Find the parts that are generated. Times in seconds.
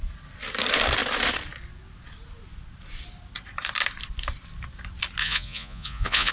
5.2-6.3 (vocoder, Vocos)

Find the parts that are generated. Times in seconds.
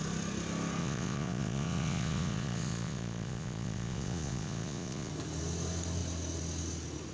0.8-5.1 (vocoder, Vocos)